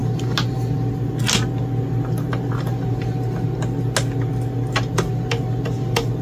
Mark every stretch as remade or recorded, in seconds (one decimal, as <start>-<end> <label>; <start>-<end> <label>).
0.0-6.2 recorded